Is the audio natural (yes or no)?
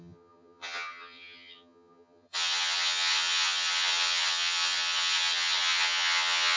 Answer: no